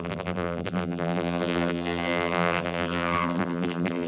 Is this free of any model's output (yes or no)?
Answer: no